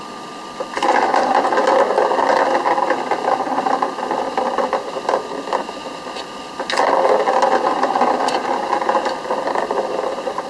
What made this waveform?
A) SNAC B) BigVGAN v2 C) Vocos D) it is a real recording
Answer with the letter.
D